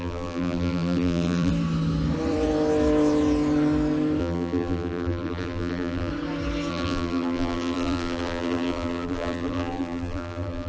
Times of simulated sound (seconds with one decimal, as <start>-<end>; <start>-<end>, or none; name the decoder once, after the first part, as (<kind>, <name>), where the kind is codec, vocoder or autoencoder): 0.0-1.5 (vocoder, BigVGAN v2); 4.2-6.1; 6.7-10.7

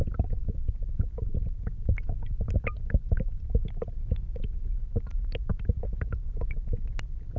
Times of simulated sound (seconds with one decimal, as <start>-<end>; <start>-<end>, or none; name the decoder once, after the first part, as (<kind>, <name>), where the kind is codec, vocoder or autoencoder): none